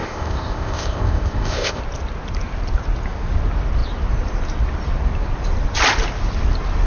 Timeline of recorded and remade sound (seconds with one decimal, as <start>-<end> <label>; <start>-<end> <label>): 0.0-1.8 remade; 1.8-6.9 recorded